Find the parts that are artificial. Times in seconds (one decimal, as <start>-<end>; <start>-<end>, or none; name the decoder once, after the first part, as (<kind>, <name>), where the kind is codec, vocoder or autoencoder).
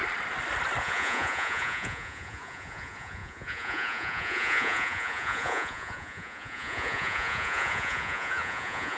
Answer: 0.8-9.0 (vocoder, Vocos)